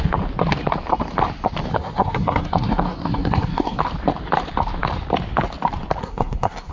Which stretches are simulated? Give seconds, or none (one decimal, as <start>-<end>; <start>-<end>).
1.7-3.8; 6.0-6.7